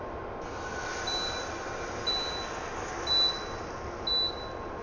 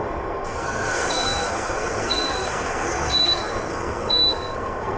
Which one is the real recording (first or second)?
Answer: first